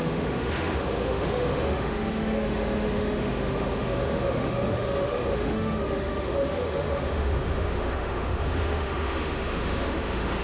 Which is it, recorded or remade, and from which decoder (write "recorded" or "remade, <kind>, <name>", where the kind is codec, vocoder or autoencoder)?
remade, autoencoder, DAC-VAE